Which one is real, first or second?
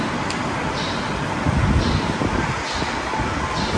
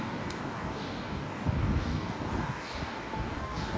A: first